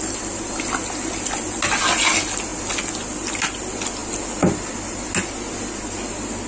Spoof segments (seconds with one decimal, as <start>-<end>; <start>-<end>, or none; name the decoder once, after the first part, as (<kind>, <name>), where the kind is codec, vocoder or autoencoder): none